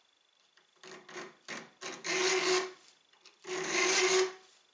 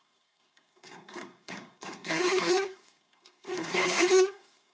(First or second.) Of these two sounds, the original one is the first